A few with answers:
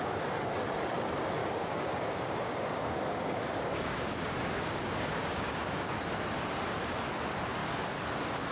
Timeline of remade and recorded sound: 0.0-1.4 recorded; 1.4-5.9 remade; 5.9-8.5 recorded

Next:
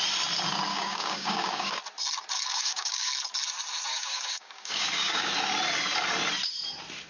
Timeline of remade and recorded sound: 0.0-0.7 recorded; 0.7-1.8 remade; 1.8-2.5 recorded; 2.5-3.1 remade; 3.1-3.9 recorded; 3.9-5.3 remade; 5.3-7.1 recorded

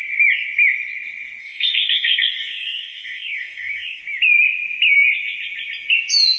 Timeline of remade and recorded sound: 0.0-1.4 recorded; 1.4-4.0 remade; 4.0-6.4 recorded

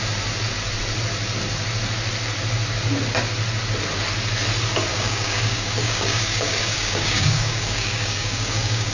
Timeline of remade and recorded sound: 0.0-4.9 recorded; 4.9-8.9 remade

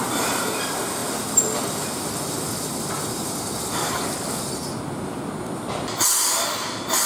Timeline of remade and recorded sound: 0.0-3.8 recorded; 3.8-4.4 remade; 4.4-7.1 recorded

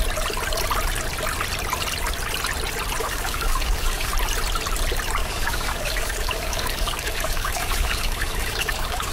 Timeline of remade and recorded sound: 0.0-3.0 recorded; 3.0-4.1 remade; 4.1-5.2 recorded; 5.2-9.1 remade

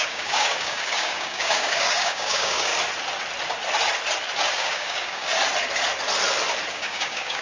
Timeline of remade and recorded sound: 0.0-2.7 remade; 2.7-4.5 recorded; 4.5-5.3 remade; 5.3-6.7 recorded; 6.7-7.4 remade

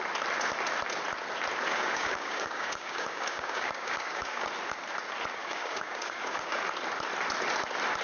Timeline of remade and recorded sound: 0.0-1.7 recorded; 1.7-4.4 remade; 4.4-5.4 recorded; 5.4-6.6 remade; 6.6-8.0 recorded